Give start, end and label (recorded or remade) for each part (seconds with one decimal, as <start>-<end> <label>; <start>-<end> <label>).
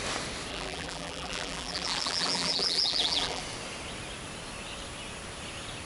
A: 0.0-0.5 recorded; 0.5-3.4 remade; 3.4-5.8 recorded